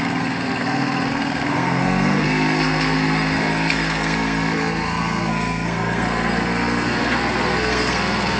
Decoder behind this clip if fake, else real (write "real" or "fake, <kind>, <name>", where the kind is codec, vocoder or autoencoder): fake, codec, SNAC